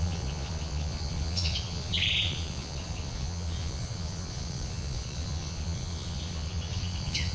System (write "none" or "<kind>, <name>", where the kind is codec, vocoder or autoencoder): vocoder, Vocos